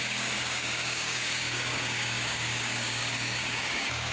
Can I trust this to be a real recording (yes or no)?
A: no